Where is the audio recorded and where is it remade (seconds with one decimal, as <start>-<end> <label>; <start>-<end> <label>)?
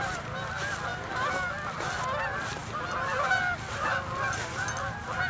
0.0-5.3 recorded